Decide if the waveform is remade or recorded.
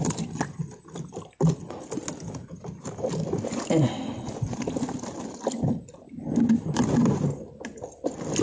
recorded